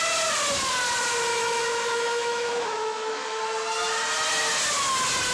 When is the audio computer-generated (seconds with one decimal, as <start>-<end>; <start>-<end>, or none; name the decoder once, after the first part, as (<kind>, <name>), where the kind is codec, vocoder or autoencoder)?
1.3-3.4 (autoencoder, DAC-VAE)